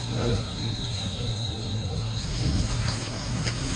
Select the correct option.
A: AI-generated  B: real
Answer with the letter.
A